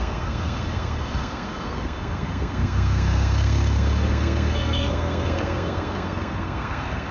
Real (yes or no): no